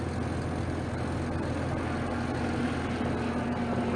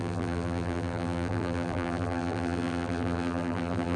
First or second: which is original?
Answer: first